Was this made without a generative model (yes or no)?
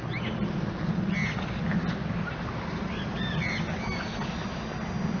yes